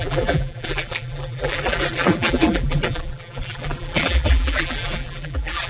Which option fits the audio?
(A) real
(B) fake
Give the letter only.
B